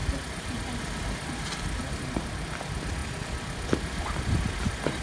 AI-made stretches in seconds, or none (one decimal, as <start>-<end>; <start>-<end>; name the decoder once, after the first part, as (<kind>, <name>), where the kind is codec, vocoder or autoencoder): none